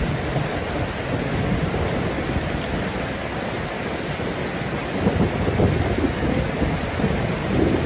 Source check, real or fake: real